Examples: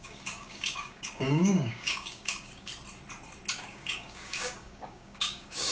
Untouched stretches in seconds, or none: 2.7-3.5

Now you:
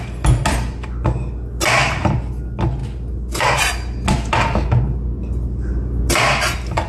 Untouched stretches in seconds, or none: 0.0-6.9